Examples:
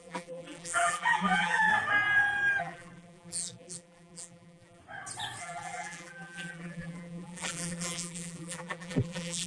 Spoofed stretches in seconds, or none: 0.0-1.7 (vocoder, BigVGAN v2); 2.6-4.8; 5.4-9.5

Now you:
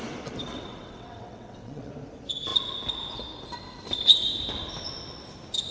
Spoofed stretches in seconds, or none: 0.5-1.9 (vocoder, WaveNeXt)

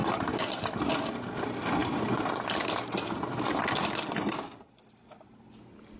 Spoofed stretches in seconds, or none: 0.0-0.9 (vocoder, BigVGAN v2); 1.8-3.6

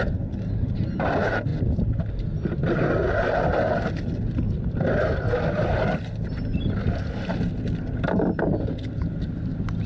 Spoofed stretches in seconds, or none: none

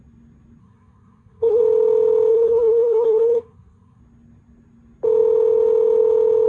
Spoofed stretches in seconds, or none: 0.6-1.6 (codec, SNAC); 2.3-4.0

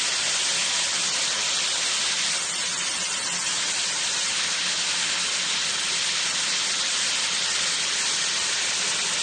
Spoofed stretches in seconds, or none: none